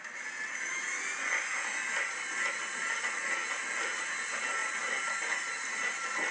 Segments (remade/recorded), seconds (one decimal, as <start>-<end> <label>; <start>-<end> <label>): 0.0-6.3 recorded